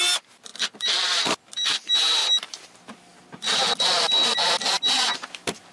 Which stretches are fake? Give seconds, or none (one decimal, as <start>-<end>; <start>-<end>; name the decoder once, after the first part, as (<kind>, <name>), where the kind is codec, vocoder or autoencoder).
2.2-2.7 (vocoder, BigVGAN v2)

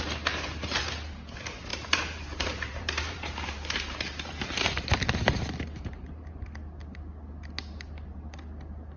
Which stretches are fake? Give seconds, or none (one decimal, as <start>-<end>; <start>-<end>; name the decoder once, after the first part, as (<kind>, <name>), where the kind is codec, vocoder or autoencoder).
1.7-6.3 (vocoder, BigVGAN v2)

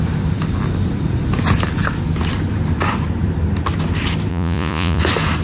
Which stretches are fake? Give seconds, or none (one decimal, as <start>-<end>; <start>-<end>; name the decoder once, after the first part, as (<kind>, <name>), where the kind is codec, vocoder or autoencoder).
4.3-5.0 (vocoder, Vocos)